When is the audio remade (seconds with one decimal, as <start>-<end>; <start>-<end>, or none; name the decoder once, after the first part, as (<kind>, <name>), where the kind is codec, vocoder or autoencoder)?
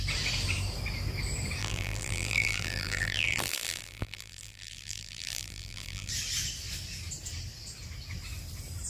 1.6-6.1 (vocoder, BigVGAN v2)